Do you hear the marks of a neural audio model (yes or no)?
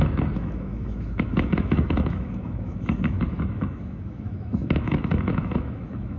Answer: yes